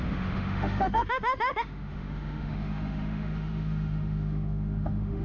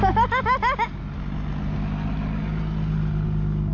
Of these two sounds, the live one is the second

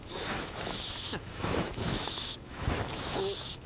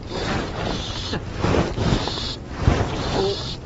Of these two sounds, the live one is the second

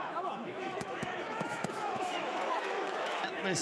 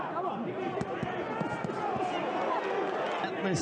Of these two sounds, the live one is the second